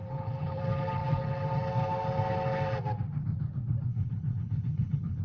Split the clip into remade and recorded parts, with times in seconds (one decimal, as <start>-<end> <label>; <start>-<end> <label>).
0.0-0.6 remade; 0.6-3.9 recorded; 3.9-5.2 remade